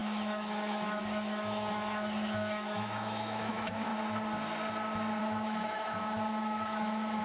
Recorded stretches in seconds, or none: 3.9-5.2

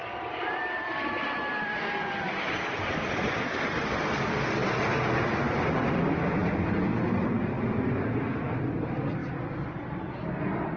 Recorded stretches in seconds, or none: 0.0-10.8

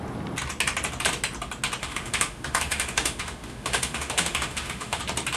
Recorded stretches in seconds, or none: 0.0-1.8; 5.0-5.4